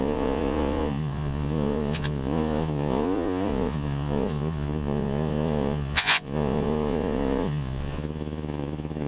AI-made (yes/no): yes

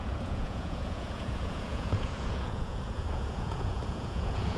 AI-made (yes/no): yes